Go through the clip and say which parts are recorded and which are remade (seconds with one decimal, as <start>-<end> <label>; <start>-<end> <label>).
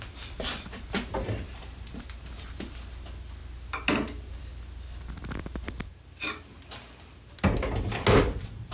0.0-8.7 recorded